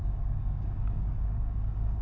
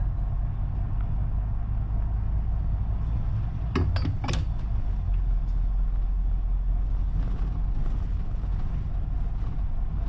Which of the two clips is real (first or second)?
second